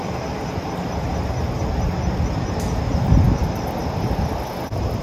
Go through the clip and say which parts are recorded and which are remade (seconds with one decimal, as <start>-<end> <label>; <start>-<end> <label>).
0.0-5.0 recorded